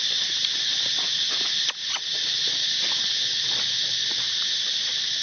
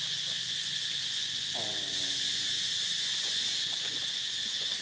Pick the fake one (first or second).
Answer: second